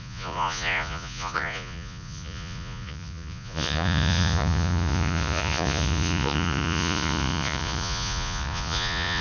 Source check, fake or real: fake